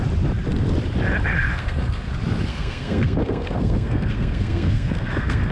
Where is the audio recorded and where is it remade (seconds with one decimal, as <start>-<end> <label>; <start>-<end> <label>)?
0.0-1.5 recorded; 1.5-2.1 remade; 2.1-2.5 recorded; 2.5-5.5 remade